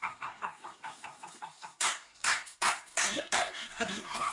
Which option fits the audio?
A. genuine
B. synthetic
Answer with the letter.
B